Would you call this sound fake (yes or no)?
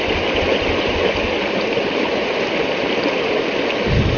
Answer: no